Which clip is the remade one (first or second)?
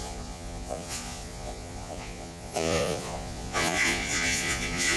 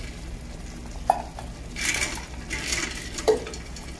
first